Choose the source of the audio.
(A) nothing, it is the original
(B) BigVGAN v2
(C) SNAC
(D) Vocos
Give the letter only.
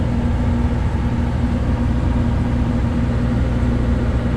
A